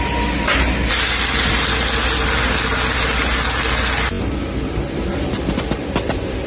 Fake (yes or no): no